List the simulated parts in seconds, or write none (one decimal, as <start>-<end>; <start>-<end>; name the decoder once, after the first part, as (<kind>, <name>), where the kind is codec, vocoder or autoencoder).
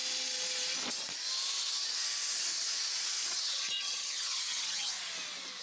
3.4-5.1 (vocoder, HiFi-GAN)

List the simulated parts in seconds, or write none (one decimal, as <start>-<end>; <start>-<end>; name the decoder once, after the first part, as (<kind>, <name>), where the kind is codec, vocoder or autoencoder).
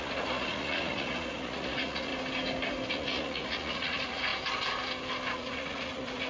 0.0-2.1 (vocoder, Vocos); 2.9-4.3; 5.3-6.3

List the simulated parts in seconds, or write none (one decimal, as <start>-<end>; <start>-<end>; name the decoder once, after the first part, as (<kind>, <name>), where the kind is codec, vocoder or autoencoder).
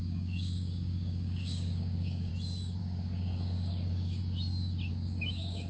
0.0-2.3 (codec, DAC); 2.8-4.2; 4.9-5.7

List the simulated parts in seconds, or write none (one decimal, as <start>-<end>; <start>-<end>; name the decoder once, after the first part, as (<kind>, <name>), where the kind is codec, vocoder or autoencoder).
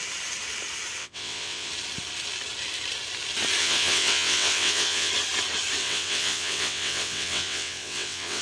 1.0-1.7 (vocoder, WaveNeXt); 3.6-5.1; 5.8-8.4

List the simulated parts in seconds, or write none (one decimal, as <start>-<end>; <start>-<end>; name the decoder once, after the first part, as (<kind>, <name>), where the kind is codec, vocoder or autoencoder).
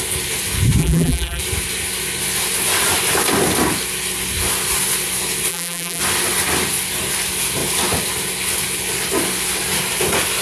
0.8-1.4 (vocoder, BigVGAN v2); 5.5-6.0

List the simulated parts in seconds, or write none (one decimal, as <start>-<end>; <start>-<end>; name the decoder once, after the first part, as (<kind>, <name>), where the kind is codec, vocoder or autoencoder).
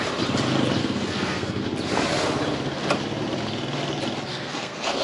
0.8-1.6 (codec, SNAC); 4.3-5.0